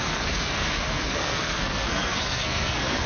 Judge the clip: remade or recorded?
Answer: remade